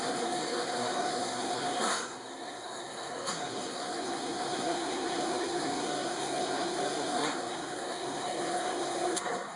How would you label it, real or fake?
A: fake